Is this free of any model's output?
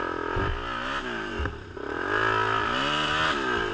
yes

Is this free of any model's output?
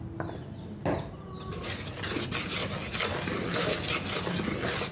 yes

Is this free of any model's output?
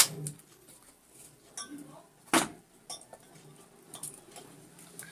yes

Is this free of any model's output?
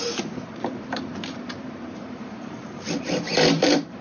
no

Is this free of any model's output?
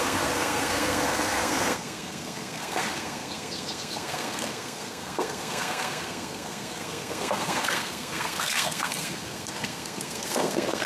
no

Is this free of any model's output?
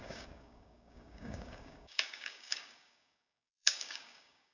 no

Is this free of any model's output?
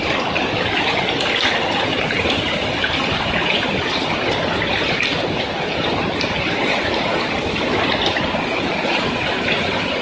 yes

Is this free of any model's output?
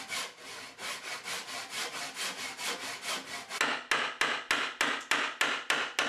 yes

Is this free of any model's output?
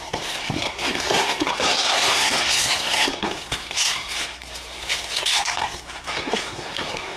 no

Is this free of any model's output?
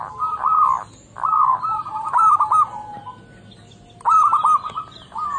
yes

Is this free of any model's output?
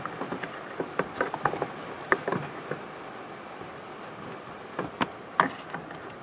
yes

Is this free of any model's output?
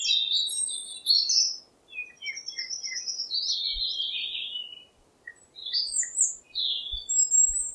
yes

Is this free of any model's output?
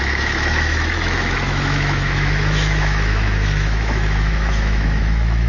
no